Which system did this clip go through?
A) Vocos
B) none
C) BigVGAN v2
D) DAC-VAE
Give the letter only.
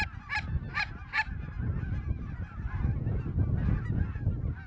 B